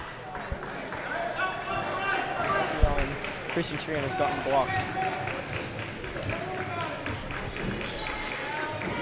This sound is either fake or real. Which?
real